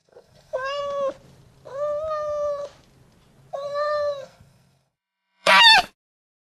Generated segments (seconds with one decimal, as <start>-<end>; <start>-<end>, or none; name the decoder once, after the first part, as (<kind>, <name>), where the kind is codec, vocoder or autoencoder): 0.0-0.8 (codec, SNAC); 3.5-5.5